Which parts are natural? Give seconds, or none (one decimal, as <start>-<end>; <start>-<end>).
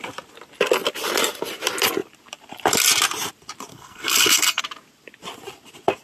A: 0.0-3.7; 4.6-6.0